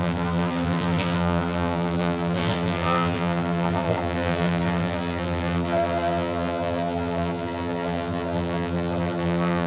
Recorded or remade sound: remade